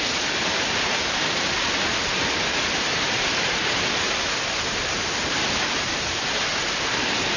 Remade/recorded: remade